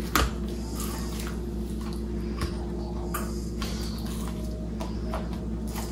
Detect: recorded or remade recorded